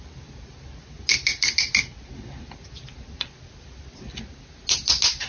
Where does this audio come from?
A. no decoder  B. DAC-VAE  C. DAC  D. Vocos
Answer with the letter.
A